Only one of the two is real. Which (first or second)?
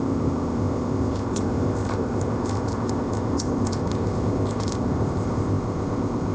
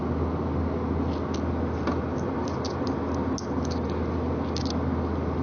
second